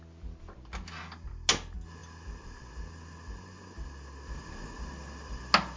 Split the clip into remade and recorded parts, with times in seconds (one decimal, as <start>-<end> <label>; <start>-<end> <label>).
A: 0.0-5.8 recorded